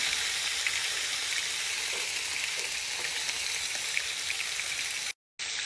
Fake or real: real